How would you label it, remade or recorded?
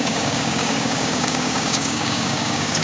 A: remade